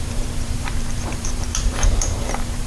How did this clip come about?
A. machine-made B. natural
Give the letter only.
A